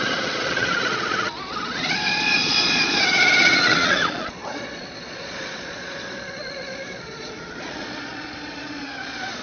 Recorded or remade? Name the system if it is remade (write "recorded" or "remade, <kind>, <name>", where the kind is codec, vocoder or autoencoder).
remade, vocoder, Vocos